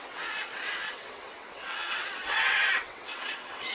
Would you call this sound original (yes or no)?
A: no